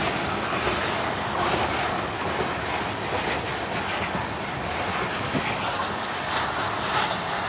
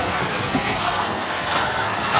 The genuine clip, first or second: first